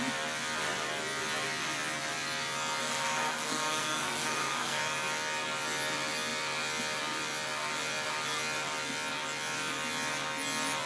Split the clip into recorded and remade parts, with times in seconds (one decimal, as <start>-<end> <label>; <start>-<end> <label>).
0.0-2.8 recorded; 2.8-4.8 remade; 4.8-10.9 recorded